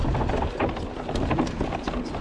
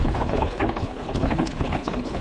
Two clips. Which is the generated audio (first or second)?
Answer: second